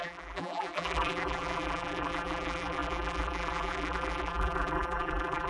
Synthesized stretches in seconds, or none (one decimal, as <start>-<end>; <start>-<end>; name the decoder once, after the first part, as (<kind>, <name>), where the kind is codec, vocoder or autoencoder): 0.0-5.5 (vocoder, BigVGAN v2)